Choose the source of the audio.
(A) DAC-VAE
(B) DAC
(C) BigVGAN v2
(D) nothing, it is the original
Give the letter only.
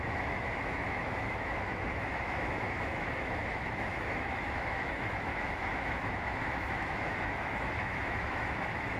A